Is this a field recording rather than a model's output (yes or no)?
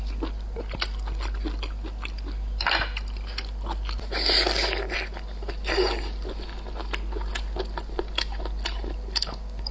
yes